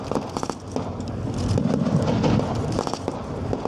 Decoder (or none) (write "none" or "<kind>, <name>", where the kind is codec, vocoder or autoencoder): none